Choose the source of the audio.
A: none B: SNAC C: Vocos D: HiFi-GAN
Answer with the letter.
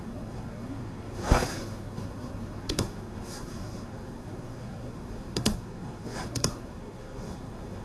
B